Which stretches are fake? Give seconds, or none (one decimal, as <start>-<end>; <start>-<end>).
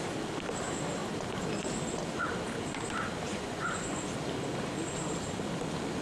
3.3-4.0